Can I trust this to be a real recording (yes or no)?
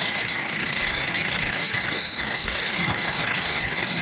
no